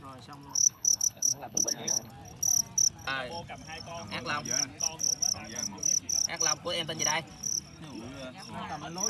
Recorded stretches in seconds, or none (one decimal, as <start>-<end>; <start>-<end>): 0.0-0.5; 2.1-9.1